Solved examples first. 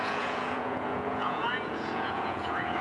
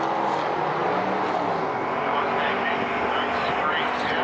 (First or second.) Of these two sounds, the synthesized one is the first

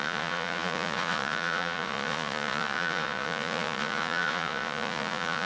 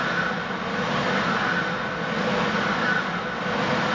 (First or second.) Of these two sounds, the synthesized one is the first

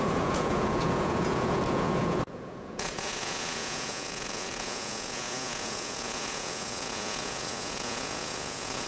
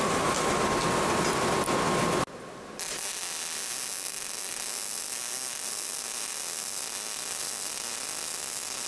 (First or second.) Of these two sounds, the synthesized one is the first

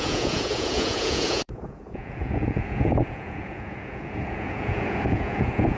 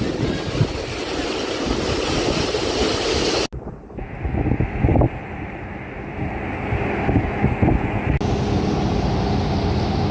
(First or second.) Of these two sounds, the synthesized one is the first